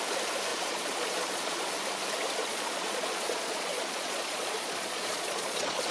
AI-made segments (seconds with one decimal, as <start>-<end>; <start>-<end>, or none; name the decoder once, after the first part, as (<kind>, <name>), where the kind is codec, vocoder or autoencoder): 0.5-1.6 (vocoder, Vocos); 2.4-5.9